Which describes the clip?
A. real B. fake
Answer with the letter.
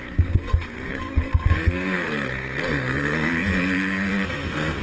B